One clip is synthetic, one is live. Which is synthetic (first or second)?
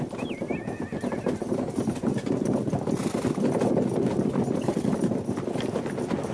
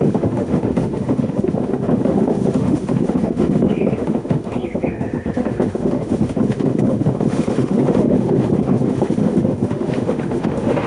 second